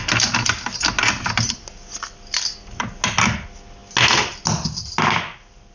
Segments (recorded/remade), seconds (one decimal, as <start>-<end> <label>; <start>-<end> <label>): 0.0-5.7 recorded